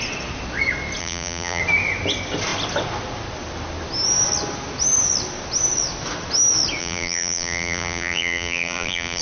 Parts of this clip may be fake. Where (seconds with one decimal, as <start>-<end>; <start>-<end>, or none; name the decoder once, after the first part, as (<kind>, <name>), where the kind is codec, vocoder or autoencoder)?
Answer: 1.0-1.6 (vocoder, BigVGAN v2); 6.8-9.2